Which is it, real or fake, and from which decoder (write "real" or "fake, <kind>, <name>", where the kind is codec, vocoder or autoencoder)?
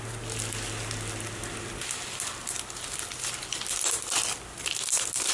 real